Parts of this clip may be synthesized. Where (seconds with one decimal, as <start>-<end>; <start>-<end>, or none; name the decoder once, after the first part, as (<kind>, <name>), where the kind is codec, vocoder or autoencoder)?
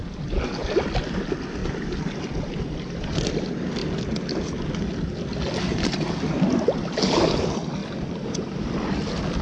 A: 7.8-8.7 (vocoder, BigVGAN v2)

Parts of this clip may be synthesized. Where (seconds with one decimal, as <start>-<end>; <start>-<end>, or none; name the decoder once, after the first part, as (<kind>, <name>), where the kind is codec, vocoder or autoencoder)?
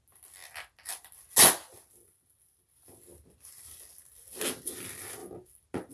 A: none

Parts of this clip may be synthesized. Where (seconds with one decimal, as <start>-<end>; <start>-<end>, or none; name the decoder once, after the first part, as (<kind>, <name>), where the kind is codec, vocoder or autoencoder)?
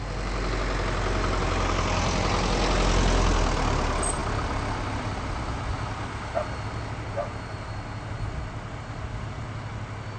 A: none